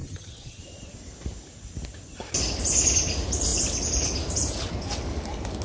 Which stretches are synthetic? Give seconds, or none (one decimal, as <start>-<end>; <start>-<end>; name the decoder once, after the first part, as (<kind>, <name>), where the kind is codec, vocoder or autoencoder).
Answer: 0.0-0.6 (vocoder, HiFi-GAN)